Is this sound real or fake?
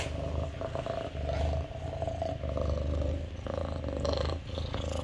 real